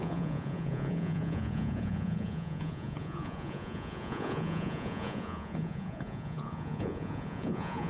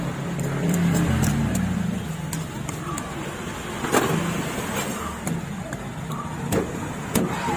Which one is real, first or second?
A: second